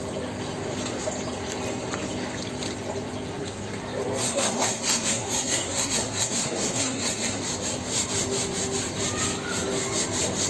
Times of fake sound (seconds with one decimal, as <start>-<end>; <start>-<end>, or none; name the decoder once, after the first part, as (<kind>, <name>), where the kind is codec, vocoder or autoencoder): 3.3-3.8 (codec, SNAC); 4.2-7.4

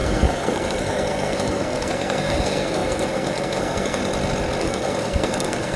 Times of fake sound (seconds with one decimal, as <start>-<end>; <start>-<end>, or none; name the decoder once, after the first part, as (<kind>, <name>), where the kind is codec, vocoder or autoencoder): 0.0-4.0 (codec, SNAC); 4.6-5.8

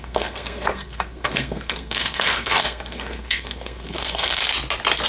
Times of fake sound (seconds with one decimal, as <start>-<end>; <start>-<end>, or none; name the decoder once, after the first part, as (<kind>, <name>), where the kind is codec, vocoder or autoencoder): 0.0-4.4 (codec, SNAC)

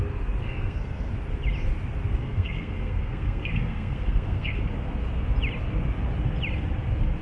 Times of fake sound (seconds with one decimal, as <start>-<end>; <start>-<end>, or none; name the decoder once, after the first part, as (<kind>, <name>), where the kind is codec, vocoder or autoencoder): 0.4-1.1 (codec, SNAC); 2.1-4.6

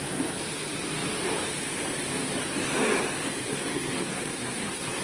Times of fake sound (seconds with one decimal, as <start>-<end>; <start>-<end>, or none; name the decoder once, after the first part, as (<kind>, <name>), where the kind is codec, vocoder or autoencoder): 3.5-5.0 (codec, SNAC)

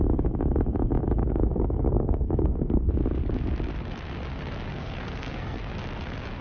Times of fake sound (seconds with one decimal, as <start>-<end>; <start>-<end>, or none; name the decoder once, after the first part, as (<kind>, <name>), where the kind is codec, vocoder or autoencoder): 1.2-2.9 (codec, SNAC); 4.7-5.6

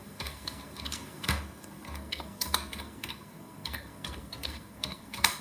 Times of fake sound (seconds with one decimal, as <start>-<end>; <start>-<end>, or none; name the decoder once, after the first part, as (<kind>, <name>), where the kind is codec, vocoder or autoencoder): 0.0-5.4 (codec, SNAC)